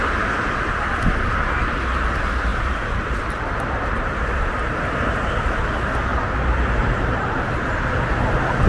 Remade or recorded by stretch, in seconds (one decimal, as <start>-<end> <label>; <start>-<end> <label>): 0.0-2.5 recorded; 2.5-4.8 remade; 4.8-6.1 recorded; 6.1-7.5 remade; 7.5-8.7 recorded